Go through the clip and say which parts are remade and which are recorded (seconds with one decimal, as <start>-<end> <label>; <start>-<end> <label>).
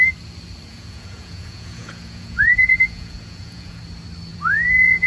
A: 0.0-0.7 recorded; 0.7-3.8 remade; 3.8-4.3 recorded; 4.3-5.1 remade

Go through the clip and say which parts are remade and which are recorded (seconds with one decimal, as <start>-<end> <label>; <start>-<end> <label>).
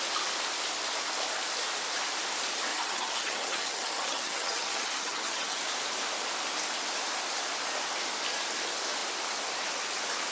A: 0.0-2.7 recorded; 2.7-5.6 remade; 5.6-10.3 recorded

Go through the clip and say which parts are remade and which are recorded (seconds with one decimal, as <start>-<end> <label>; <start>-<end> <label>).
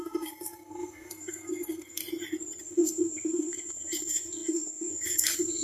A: 0.0-2.0 remade; 2.0-2.6 recorded; 2.6-5.6 remade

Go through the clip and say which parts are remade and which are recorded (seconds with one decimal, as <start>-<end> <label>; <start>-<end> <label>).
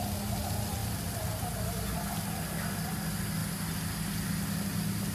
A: 0.0-0.8 recorded; 0.8-1.7 remade; 1.7-5.1 recorded